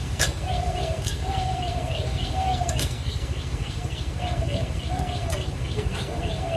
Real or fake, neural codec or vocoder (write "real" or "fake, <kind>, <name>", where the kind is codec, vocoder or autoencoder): fake, codec, SNAC